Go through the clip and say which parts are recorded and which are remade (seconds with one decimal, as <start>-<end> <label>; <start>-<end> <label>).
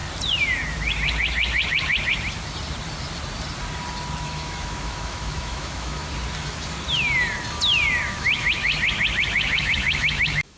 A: 0.0-4.2 recorded; 4.2-6.0 remade; 6.0-8.1 recorded; 8.1-8.6 remade; 8.6-9.6 recorded; 9.6-10.6 remade